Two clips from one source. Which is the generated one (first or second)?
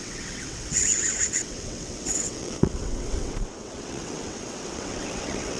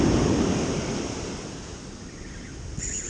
first